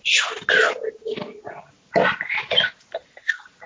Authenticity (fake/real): real